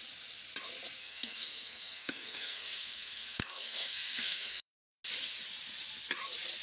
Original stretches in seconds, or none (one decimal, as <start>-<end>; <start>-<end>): 0.0-1.0; 5.0-6.6